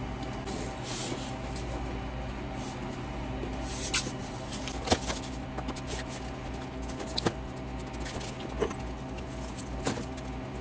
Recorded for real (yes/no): yes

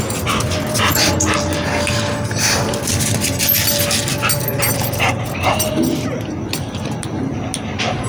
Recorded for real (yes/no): yes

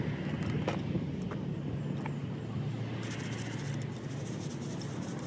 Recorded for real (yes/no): yes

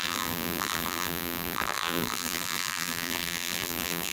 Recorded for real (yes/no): no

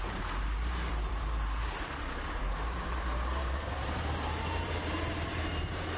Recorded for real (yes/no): no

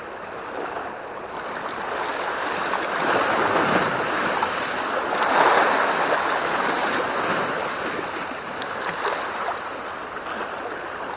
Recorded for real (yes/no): yes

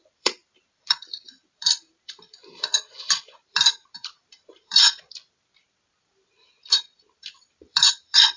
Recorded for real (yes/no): no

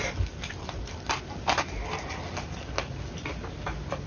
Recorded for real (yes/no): yes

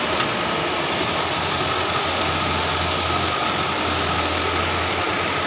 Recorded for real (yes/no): yes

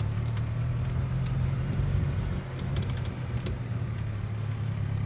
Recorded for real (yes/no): no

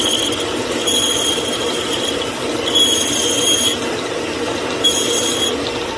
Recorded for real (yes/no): yes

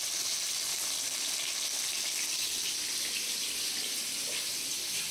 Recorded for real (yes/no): yes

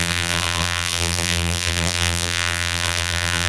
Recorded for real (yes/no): no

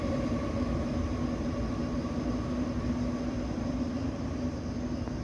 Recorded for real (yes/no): yes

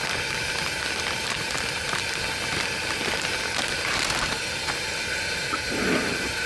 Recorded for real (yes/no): no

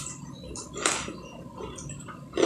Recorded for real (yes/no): no